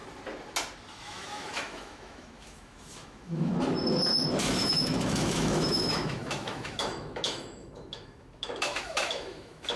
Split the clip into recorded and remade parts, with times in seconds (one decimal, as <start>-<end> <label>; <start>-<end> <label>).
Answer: 0.0-0.9 recorded; 0.9-3.5 remade; 3.5-4.4 recorded; 4.4-9.8 remade